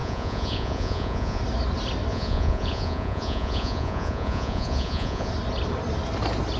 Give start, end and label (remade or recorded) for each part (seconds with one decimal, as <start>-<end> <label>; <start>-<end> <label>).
0.0-1.4 remade; 1.4-2.1 recorded; 2.1-5.3 remade; 5.3-6.6 recorded